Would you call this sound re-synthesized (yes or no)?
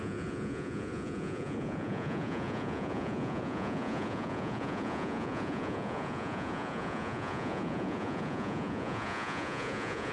yes